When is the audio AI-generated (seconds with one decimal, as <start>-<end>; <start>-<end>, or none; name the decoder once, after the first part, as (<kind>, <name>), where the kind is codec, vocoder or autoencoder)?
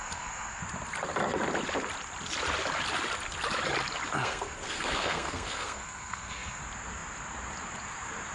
0.0-0.6 (codec, SNAC); 4.2-6.6